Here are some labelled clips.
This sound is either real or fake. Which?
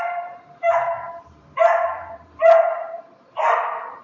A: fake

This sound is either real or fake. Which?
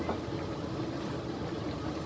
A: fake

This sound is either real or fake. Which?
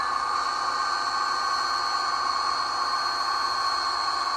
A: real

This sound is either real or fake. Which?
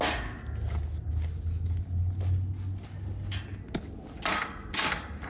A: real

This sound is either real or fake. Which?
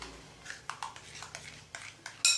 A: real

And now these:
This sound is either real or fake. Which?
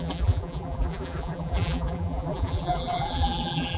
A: fake